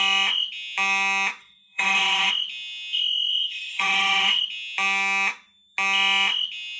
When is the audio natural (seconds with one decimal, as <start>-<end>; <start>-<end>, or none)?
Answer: 0.0-1.4; 2.3-3.3; 4.4-6.8